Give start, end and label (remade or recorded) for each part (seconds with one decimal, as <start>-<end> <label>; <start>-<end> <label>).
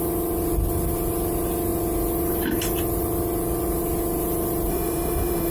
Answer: 0.0-4.7 recorded; 4.7-5.5 remade